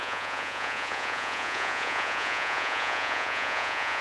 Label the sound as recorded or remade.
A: remade